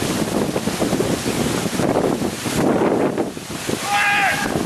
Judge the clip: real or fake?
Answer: real